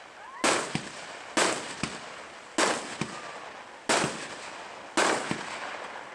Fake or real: real